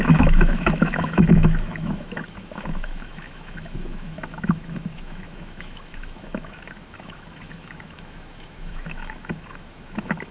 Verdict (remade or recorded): remade